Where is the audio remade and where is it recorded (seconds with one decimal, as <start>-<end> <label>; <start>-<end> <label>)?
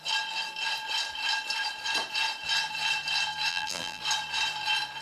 0.0-3.5 recorded; 3.5-4.0 remade; 4.0-5.0 recorded